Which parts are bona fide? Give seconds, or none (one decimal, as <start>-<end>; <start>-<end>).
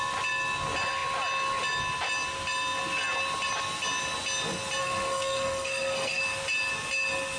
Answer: 0.0-4.8; 6.2-7.4